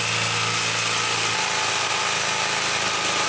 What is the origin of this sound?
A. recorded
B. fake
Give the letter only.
A